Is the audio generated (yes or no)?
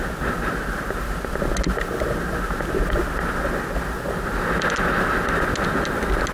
no